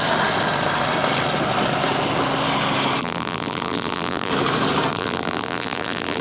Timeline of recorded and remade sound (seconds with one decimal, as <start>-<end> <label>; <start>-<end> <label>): 0.0-3.0 recorded; 3.0-4.3 remade; 4.3-4.9 recorded; 4.9-6.2 remade